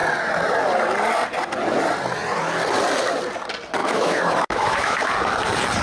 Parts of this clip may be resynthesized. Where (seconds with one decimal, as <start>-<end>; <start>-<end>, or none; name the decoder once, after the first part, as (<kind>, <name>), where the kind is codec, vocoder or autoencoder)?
3.8-5.1 (autoencoder, DAC-VAE)